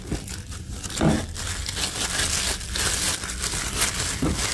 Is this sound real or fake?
real